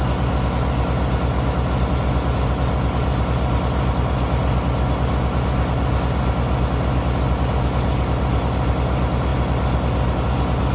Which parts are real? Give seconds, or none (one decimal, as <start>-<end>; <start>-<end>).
0.0-10.7